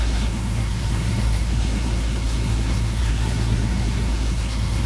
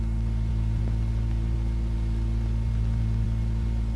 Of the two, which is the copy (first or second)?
first